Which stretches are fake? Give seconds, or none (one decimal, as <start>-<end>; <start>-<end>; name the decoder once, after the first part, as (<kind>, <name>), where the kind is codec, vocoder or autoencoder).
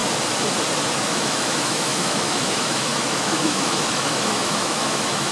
0.9-5.3 (autoencoder, DAC-VAE)